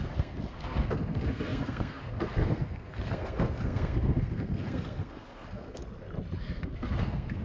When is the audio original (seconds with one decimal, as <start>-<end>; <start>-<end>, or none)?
5.8-6.4